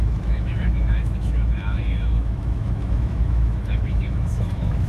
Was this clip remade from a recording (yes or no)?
yes